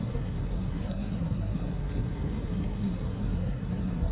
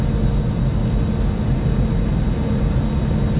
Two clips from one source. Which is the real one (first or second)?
second